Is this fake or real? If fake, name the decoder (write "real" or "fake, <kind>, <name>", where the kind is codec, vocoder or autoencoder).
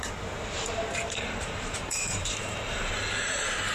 fake, vocoder, BigVGAN v2